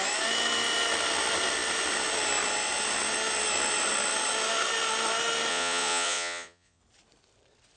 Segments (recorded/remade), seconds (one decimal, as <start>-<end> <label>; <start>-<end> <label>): 0.0-5.5 recorded; 5.5-6.8 remade; 6.8-7.8 recorded